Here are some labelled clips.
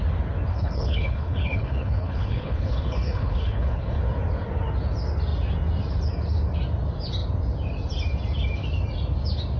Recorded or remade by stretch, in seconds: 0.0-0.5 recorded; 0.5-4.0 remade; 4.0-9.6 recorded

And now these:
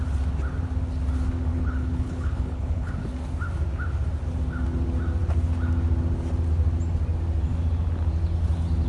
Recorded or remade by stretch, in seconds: 0.0-1.5 recorded; 1.5-2.9 remade; 2.9-8.9 recorded